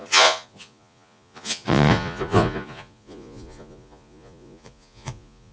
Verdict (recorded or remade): remade